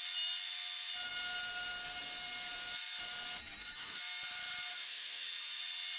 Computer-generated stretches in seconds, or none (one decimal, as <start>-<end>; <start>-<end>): 3.4-4.0; 4.7-5.6